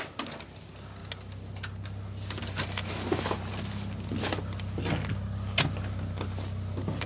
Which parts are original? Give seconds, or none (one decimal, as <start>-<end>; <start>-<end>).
0.0-7.1